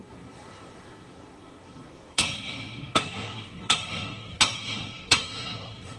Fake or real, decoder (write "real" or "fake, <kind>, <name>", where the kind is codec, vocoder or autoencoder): fake, codec, SNAC